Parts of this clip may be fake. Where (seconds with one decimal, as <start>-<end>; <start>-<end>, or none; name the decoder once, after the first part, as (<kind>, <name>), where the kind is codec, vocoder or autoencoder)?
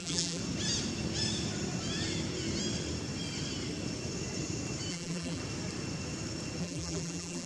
0.0-0.4 (vocoder, BigVGAN v2); 4.9-5.4; 6.6-7.5